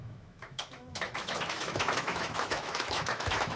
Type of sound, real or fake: fake